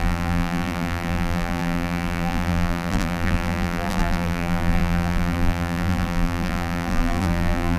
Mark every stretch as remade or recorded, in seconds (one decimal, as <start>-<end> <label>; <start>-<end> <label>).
0.0-7.8 remade